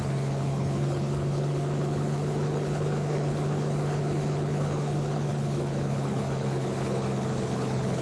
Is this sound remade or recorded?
remade